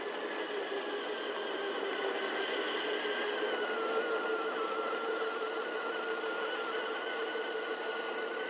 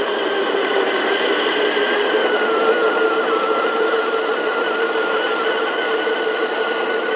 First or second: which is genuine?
first